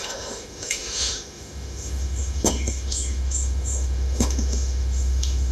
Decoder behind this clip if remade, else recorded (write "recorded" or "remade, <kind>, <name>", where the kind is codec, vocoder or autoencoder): remade, autoencoder, DAC-VAE